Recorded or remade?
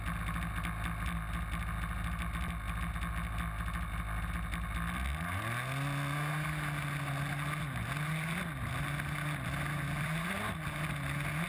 recorded